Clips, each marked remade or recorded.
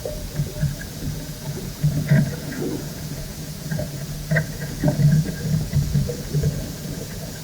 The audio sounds remade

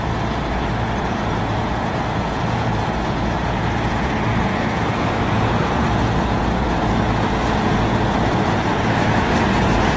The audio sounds remade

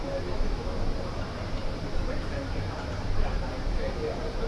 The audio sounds recorded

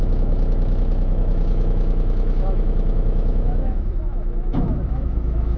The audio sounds remade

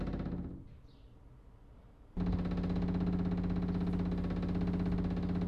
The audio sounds recorded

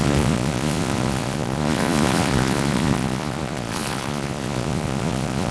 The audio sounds remade